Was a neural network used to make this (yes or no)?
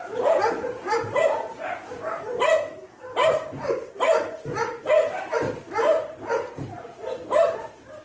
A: yes